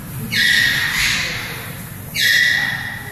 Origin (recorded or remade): recorded